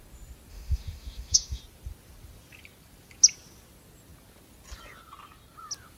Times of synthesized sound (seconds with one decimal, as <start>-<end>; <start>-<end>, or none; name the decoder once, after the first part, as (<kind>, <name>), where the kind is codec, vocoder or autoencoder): 0.5-1.6 (autoencoder, DAC-VAE)